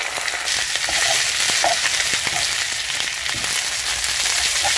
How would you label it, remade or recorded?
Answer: recorded